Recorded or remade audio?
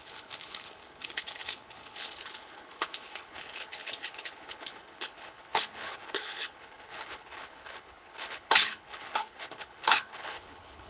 remade